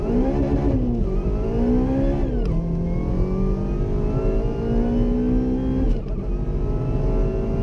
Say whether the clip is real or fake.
real